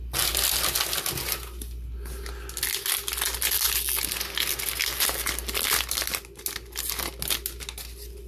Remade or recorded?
recorded